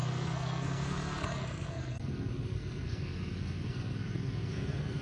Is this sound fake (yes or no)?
yes